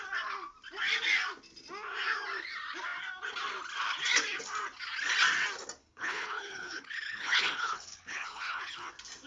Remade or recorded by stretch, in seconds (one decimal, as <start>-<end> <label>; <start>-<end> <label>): 0.0-5.8 recorded; 5.8-8.9 remade; 8.9-9.3 recorded